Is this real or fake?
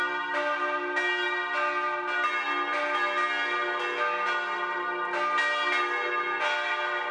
real